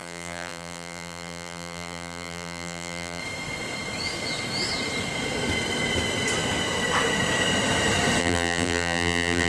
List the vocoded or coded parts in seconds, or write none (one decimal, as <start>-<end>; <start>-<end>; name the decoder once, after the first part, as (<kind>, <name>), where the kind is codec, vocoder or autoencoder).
0.0-3.2 (vocoder, BigVGAN v2); 8.2-9.5